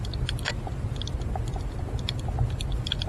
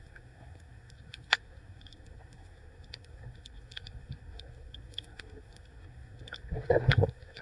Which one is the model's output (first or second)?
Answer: second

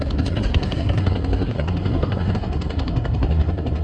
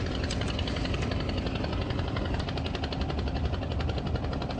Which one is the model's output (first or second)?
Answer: first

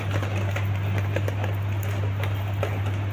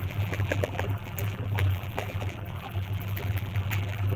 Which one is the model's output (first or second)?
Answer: second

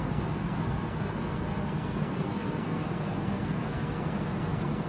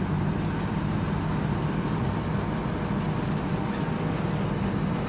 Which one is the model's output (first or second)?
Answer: first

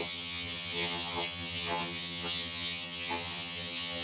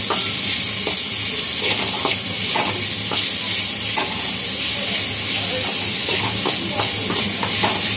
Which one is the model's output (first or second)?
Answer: first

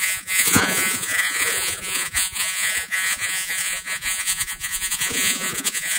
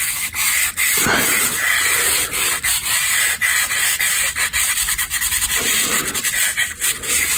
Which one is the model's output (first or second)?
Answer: first